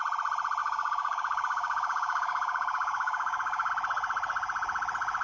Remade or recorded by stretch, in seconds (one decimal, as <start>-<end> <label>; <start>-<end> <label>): 0.0-0.6 recorded; 0.6-3.7 remade; 3.7-5.2 recorded

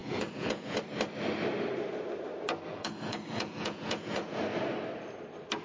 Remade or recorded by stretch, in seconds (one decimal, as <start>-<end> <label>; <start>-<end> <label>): 0.0-0.8 remade; 0.8-2.7 recorded; 2.7-4.4 remade; 4.4-5.6 recorded

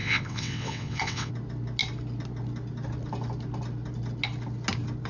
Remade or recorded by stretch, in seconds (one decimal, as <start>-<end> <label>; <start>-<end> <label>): 0.0-1.3 remade; 1.3-5.1 recorded

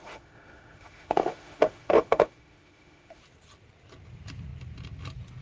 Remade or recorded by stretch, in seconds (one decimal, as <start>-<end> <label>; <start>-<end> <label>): 0.0-3.2 remade; 3.2-5.4 recorded

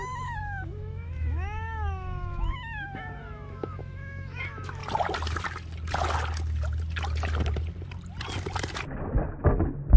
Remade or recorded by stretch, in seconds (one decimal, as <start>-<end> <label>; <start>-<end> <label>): 0.0-4.8 remade; 4.8-10.0 recorded

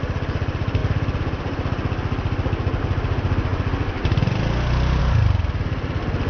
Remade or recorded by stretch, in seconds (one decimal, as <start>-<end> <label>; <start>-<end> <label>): 0.0-6.3 recorded

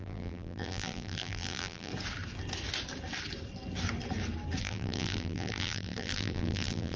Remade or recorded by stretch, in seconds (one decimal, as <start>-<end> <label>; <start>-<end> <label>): 0.0-1.9 remade; 1.9-4.6 recorded; 4.6-7.0 remade